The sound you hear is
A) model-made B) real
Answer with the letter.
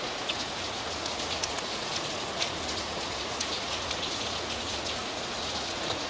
A